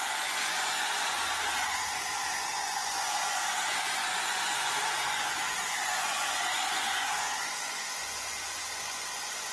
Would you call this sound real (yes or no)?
no